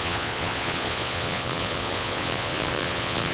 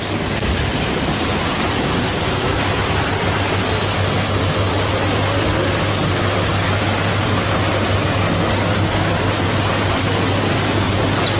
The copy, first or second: first